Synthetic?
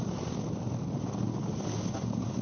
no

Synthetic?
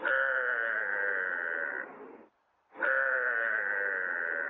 no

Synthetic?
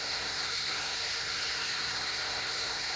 yes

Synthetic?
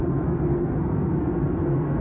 yes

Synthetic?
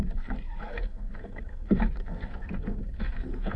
yes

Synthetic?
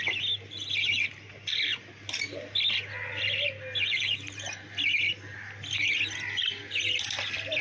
no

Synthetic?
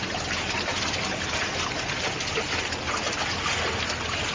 no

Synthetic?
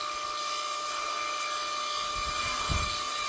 no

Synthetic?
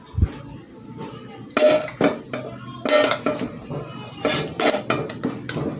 no